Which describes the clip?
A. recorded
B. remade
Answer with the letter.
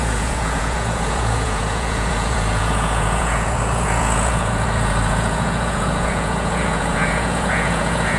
B